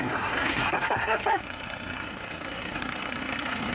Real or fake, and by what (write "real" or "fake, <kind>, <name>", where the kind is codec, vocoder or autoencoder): fake, codec, SNAC